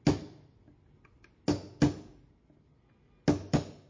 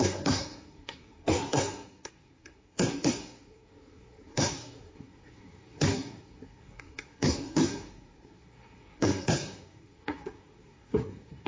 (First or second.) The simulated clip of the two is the second